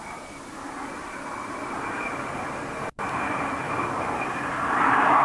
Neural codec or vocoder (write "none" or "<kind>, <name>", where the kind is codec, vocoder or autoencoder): none